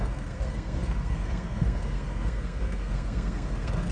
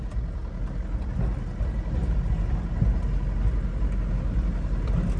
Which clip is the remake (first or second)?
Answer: first